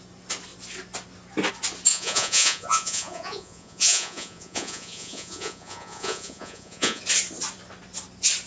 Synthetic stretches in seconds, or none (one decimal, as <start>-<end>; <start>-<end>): 1.9-7.0